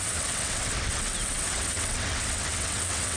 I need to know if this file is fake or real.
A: fake